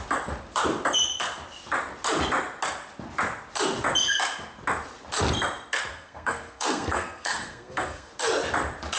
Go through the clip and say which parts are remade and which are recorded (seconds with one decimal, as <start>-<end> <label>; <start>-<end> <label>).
0.0-5.9 recorded; 5.9-8.1 remade; 8.1-9.0 recorded